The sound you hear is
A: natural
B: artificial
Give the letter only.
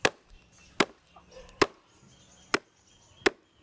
A